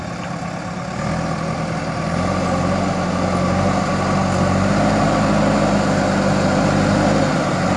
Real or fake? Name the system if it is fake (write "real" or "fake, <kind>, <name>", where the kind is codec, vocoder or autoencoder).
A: real